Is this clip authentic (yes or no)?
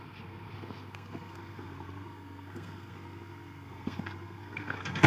no